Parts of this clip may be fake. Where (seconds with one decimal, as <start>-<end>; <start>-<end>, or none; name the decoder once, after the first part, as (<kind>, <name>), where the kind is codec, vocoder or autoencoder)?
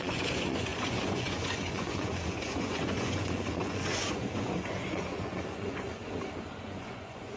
0.0-6.0 (vocoder, Vocos); 6.6-7.4